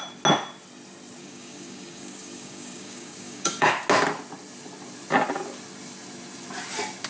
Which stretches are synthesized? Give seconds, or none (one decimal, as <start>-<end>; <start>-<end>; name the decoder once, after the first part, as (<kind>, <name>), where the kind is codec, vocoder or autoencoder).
1.2-3.7 (codec, DAC)